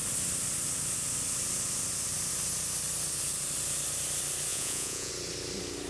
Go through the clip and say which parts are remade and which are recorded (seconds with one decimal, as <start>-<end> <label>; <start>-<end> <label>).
0.0-4.5 recorded; 4.5-5.1 remade; 5.1-5.9 recorded

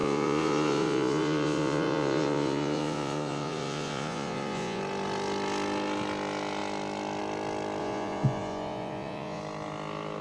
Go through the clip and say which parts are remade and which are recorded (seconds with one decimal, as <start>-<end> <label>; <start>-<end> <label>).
0.0-4.8 remade; 4.8-7.8 recorded; 7.8-9.4 remade; 9.4-10.2 recorded

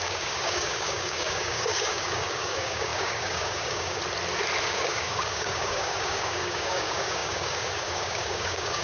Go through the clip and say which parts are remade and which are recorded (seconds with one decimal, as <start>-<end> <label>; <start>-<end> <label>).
0.0-4.0 remade; 4.0-4.6 recorded; 4.6-8.8 remade